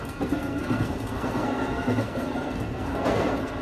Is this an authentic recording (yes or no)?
no